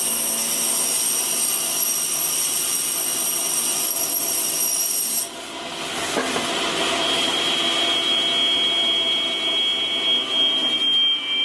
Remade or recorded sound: recorded